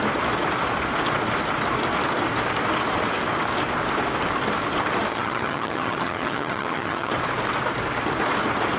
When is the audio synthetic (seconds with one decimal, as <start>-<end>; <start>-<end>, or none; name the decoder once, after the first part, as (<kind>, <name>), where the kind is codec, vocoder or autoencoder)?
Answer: 5.1-7.1 (vocoder, HiFi-GAN)